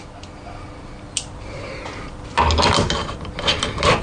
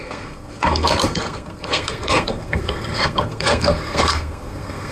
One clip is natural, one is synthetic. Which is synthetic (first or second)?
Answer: second